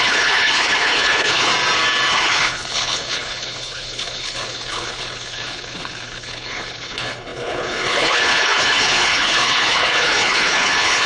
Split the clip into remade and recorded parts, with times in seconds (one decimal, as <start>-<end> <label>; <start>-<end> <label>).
0.0-1.5 remade; 1.5-2.1 recorded; 2.1-11.1 remade